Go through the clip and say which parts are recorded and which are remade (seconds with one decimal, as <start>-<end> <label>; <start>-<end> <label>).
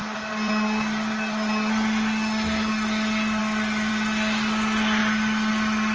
0.0-5.9 recorded